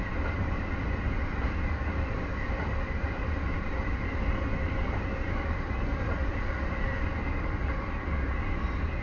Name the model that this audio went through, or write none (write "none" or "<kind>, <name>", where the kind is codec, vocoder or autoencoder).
none